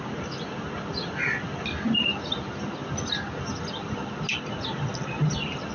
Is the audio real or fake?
real